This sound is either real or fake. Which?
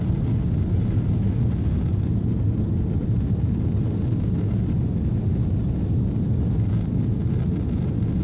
real